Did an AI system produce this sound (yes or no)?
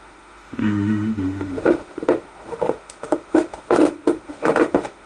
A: yes